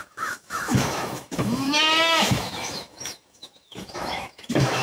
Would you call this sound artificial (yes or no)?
yes